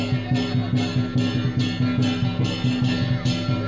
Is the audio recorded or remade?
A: recorded